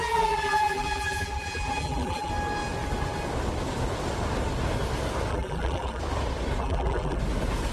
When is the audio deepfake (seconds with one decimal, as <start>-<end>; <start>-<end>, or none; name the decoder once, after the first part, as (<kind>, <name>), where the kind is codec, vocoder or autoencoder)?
0.0-2.3 (vocoder, BigVGAN v2); 5.3-6.0; 6.6-7.2